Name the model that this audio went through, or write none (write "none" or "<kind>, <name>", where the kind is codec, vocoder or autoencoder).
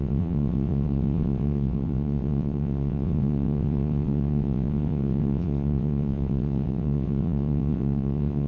vocoder, WaveNeXt